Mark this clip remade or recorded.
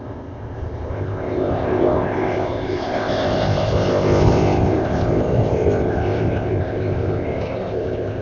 remade